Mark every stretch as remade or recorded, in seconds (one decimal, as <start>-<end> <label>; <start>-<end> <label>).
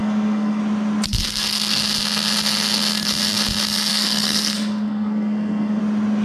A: 0.0-0.6 remade; 0.6-1.1 recorded; 1.1-1.8 remade; 1.8-3.9 recorded; 3.9-5.8 remade; 5.8-6.2 recorded